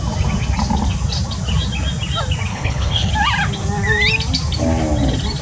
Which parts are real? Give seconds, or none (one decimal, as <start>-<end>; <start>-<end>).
0.0-2.5; 3.1-5.4